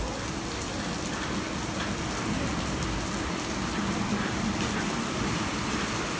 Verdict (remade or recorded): recorded